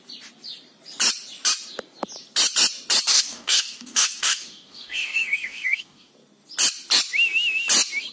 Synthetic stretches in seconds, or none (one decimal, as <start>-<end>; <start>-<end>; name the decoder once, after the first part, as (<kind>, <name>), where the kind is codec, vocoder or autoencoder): 3.1-6.1 (codec, DAC)